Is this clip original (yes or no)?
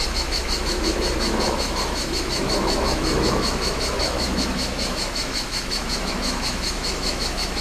no